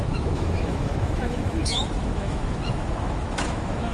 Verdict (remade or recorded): remade